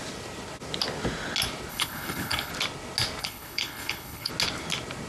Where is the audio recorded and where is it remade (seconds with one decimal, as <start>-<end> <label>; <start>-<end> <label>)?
0.0-1.7 recorded; 1.7-2.5 remade; 2.5-3.2 recorded; 3.2-4.3 remade; 4.3-5.1 recorded